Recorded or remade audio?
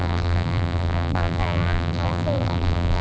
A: remade